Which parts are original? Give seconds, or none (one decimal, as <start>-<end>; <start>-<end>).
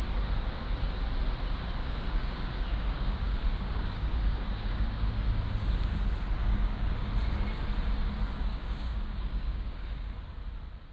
0.0-1.8; 5.3-6.4; 7.1-8.5; 9.9-10.9